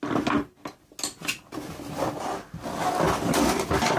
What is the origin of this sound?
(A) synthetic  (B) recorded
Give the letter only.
B